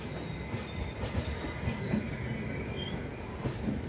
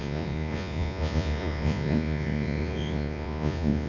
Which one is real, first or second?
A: first